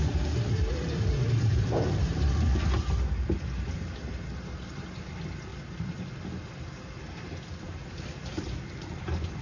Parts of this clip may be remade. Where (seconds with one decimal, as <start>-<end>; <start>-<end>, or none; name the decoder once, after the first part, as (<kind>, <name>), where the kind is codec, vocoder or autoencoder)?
0.0-2.5 (vocoder, BigVGAN v2); 5.5-6.1; 8.2-9.0

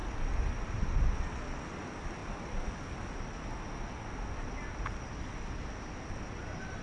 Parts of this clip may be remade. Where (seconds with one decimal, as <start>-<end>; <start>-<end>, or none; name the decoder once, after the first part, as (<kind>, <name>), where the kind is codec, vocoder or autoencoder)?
none

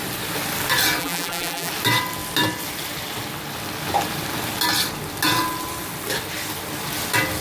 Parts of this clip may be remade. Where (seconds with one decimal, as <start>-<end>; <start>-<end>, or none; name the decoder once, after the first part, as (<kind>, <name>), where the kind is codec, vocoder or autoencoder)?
1.0-1.7 (vocoder, BigVGAN v2)

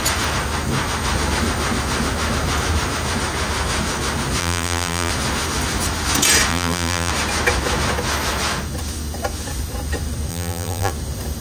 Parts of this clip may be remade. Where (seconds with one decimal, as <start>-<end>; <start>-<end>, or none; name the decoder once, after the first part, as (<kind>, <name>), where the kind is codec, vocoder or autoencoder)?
4.4-5.1 (vocoder, BigVGAN v2); 6.5-7.1; 10.3-10.9

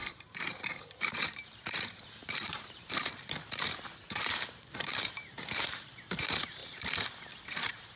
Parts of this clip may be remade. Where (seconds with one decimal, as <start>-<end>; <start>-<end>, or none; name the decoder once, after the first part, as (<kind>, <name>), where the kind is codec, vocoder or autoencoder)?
0.0-6.6 (vocoder, BigVGAN v2); 7.5-8.0

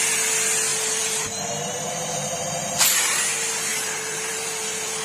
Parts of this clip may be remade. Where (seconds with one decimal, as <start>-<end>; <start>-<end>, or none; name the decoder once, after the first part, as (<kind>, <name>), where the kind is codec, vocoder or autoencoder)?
0.7-3.2 (vocoder, BigVGAN v2); 3.7-5.0

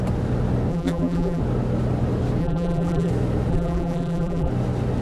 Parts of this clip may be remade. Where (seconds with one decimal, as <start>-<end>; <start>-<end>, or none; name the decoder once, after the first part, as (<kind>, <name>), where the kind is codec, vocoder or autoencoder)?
0.7-1.4 (vocoder, BigVGAN v2); 2.4-3.1; 3.5-4.5